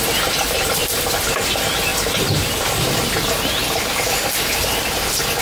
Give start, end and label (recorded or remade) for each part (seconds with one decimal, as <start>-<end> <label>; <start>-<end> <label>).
0.0-5.4 recorded